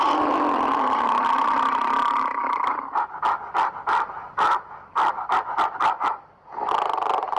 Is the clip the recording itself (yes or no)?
yes